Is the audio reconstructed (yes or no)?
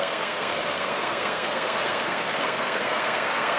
yes